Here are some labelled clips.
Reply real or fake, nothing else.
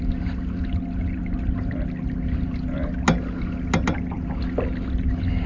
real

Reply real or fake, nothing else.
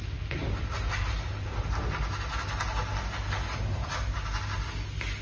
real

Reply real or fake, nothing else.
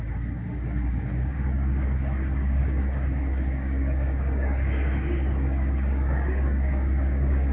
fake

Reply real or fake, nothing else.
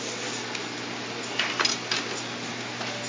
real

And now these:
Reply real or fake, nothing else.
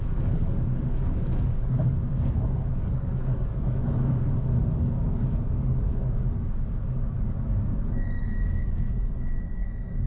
fake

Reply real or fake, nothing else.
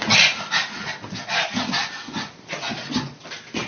real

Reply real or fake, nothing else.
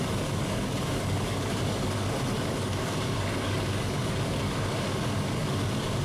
fake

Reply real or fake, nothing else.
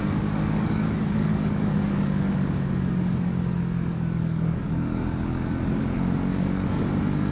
fake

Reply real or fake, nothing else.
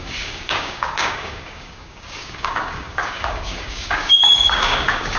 fake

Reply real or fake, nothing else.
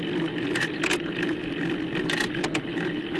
real